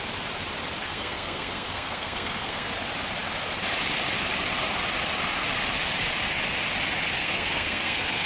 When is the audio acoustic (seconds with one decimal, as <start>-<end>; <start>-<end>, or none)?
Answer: 0.0-0.8; 2.7-7.2